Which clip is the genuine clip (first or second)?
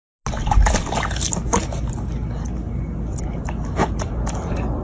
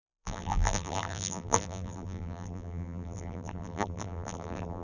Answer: first